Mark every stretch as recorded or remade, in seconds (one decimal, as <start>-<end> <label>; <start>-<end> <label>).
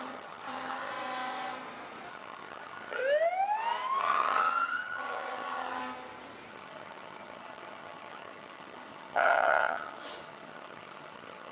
0.0-0.9 remade; 0.9-2.1 recorded; 2.1-3.0 remade; 3.0-4.0 recorded; 4.0-5.8 remade; 5.8-6.5 recorded; 6.5-11.5 remade